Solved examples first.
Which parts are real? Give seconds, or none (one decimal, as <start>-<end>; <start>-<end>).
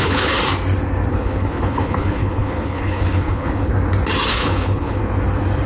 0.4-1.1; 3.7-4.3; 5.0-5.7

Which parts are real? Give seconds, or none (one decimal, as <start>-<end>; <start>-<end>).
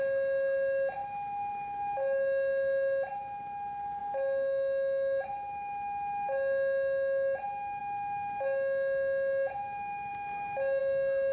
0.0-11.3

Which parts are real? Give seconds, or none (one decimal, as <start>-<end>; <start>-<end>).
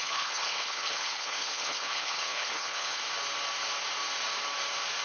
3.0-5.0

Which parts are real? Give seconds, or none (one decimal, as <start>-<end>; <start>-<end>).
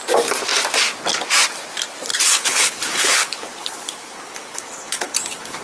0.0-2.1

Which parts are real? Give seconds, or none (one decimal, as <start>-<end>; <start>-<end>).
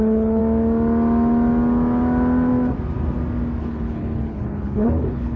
0.4-3.6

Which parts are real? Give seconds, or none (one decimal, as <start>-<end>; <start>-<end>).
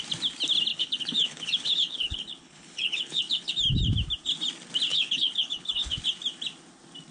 0.0-0.7; 3.5-4.9; 6.0-7.1